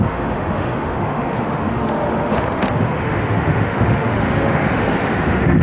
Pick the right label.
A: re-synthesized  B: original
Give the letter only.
A